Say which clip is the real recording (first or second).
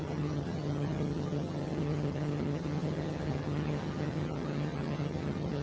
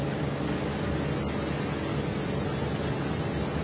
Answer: second